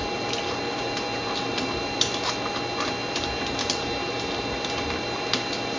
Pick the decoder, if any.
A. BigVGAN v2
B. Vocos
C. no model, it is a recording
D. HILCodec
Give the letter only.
C